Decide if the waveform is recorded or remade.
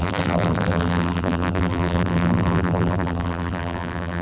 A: remade